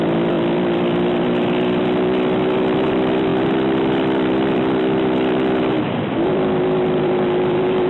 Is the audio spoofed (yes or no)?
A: yes